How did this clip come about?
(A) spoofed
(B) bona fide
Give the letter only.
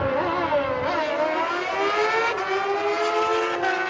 B